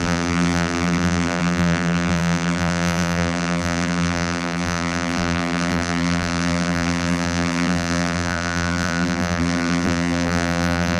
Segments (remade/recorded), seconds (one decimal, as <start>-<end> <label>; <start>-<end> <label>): 0.0-11.0 remade